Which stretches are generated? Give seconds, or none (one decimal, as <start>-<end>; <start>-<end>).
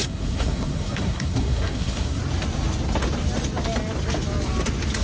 0.0-2.2